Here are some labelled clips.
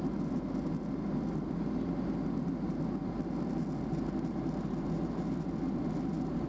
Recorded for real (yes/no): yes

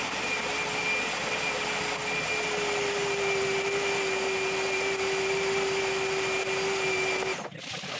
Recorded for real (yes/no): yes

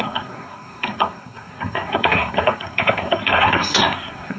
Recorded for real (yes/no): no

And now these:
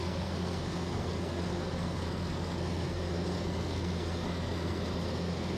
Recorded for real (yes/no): no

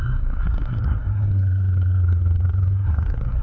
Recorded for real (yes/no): no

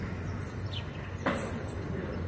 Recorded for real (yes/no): yes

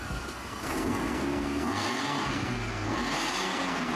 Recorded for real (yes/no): no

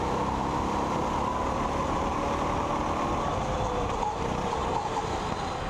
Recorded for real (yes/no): yes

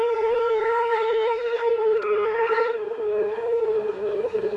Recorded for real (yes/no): no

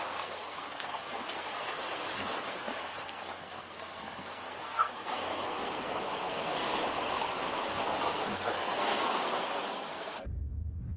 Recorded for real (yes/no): no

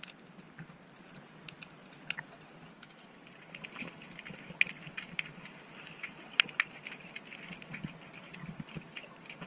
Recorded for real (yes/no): yes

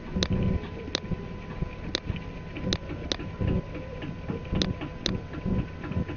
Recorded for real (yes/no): yes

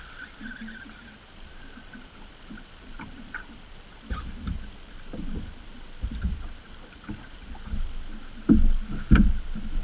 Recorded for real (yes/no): yes